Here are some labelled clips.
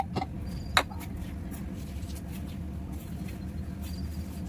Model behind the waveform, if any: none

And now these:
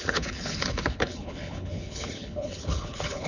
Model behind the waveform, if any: codec, HILCodec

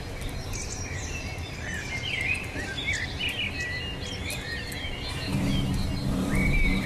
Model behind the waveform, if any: none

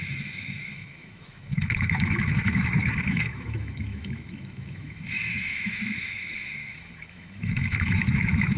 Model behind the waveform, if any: autoencoder, DAC-VAE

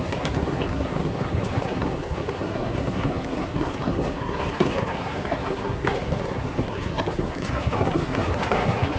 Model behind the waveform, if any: codec, SNAC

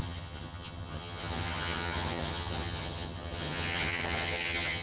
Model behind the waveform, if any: vocoder, HiFi-GAN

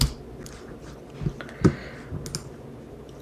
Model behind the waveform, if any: none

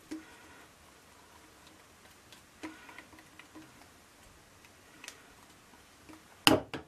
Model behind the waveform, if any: none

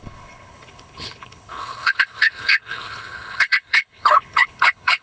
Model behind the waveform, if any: codec, HILCodec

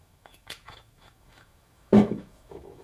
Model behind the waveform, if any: autoencoder, DAC-VAE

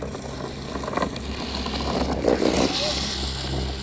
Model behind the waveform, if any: none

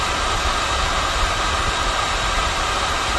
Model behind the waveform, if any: vocoder, BigVGAN v2